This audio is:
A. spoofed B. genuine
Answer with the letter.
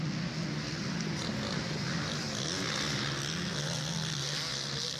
B